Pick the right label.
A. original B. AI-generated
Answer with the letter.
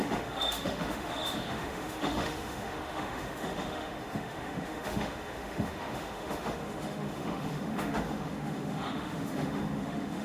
B